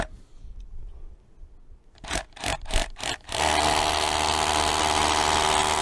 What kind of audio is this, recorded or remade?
recorded